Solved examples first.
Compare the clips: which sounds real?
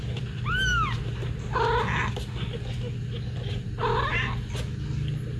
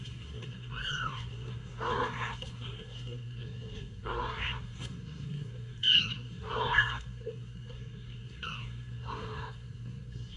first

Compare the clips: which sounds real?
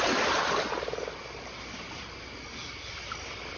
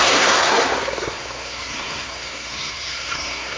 first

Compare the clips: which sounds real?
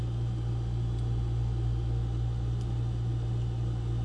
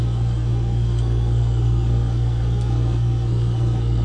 first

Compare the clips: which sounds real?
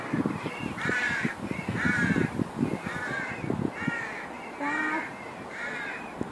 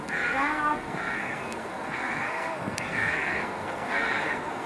first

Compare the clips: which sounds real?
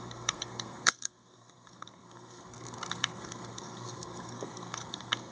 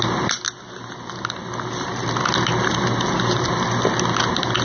second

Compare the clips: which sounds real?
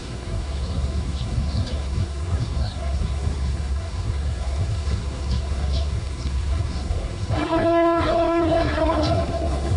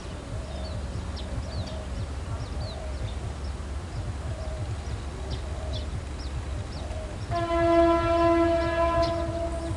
second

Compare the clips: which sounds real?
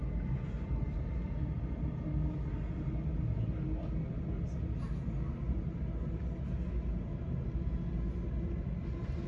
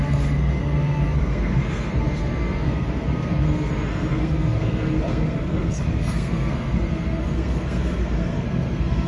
first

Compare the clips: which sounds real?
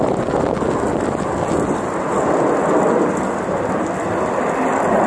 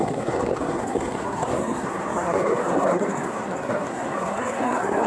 first